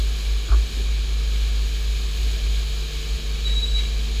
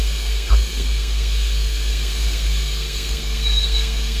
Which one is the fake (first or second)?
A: second